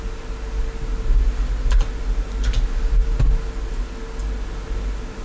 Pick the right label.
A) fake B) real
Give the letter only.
B